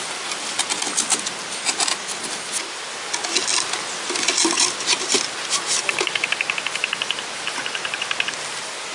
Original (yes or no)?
yes